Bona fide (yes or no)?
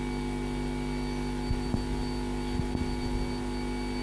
yes